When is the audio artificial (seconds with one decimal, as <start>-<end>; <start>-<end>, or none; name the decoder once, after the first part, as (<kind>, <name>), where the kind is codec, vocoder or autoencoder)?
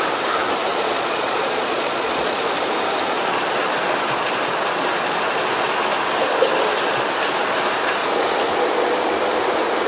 0.7-2.4 (vocoder, Vocos)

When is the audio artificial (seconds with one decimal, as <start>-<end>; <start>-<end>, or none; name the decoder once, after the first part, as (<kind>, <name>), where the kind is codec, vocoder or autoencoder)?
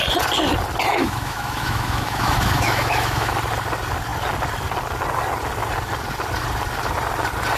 0.9-3.3 (autoencoder, DAC-VAE)